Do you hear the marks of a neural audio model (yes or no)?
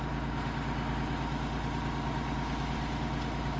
no